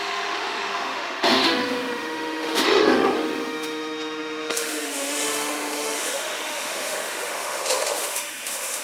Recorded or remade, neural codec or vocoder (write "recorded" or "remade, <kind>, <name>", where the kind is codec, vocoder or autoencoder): remade, autoencoder, DAC-VAE